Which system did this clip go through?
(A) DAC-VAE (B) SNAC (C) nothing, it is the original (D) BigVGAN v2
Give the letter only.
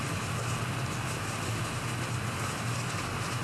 C